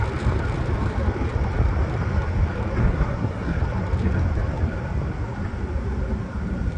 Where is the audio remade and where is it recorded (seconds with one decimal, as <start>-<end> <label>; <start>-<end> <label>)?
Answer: 0.0-2.8 recorded; 2.8-3.6 remade; 3.6-6.8 recorded